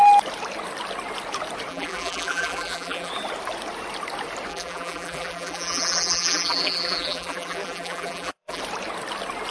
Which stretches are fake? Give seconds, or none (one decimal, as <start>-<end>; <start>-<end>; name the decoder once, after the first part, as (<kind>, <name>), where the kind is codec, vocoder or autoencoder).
1.7-3.1 (vocoder, BigVGAN v2); 4.5-8.6